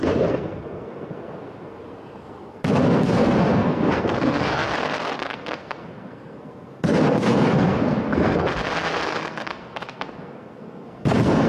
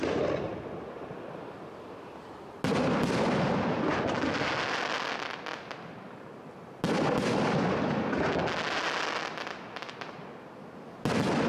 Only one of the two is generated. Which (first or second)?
first